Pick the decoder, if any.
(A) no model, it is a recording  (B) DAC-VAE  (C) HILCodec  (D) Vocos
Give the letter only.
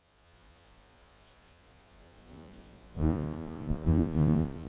D